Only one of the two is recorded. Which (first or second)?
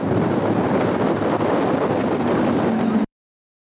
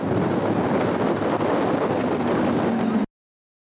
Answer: second